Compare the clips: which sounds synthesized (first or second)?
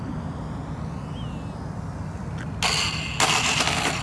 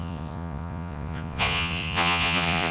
second